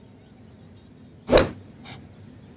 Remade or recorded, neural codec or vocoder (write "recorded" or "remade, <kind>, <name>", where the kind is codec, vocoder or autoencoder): recorded